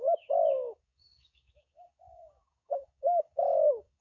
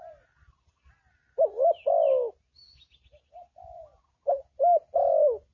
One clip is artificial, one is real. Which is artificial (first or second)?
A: first